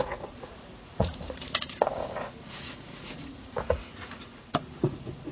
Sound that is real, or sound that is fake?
fake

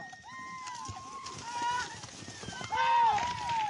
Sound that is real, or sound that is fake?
real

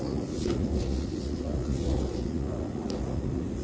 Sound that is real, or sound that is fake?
fake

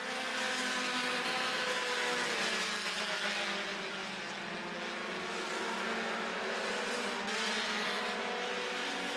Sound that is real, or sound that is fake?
real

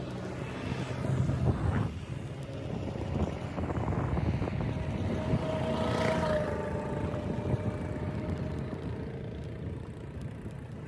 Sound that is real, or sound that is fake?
real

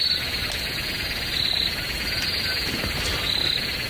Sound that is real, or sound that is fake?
real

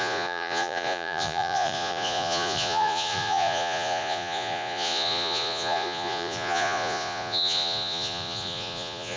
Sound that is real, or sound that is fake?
fake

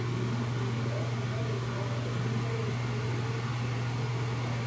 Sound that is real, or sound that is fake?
real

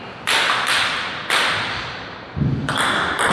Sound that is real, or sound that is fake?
real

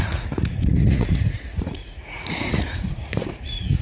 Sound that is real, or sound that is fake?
fake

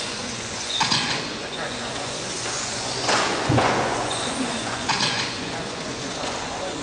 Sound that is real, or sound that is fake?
fake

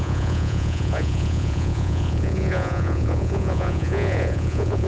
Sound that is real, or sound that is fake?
fake